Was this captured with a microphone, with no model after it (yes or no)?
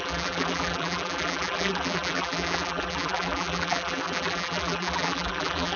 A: no